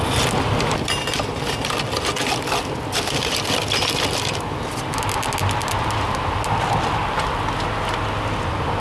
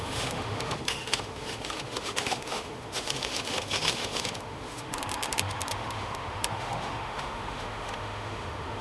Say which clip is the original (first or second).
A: first